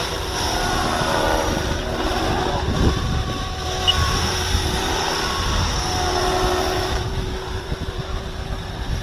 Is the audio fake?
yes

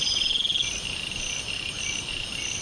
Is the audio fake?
no